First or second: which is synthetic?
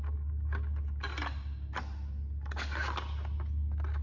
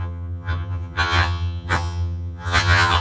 second